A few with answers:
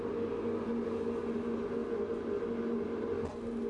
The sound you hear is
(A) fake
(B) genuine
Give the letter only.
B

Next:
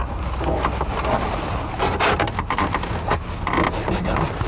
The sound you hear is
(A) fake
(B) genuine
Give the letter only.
B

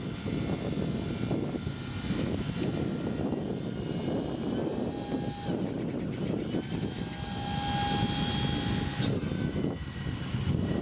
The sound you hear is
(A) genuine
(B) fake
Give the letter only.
A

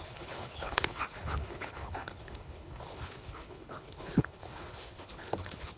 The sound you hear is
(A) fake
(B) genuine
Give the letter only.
A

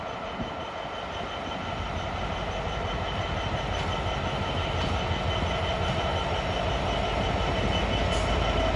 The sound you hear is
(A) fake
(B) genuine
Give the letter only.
B